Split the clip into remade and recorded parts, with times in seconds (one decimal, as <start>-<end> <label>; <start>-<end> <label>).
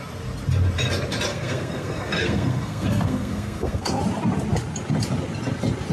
0.0-1.3 recorded; 1.3-4.0 remade; 4.0-5.9 recorded